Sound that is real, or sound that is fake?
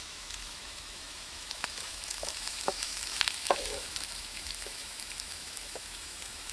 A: fake